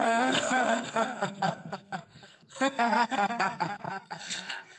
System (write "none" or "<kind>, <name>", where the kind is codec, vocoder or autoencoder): codec, SNAC